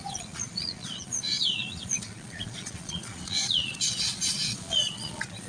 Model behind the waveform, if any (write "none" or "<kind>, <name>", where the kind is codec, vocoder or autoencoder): vocoder, Vocos